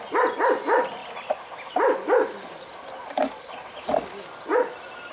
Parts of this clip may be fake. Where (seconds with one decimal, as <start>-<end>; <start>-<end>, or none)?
none